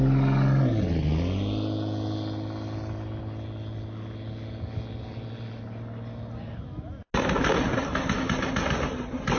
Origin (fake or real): real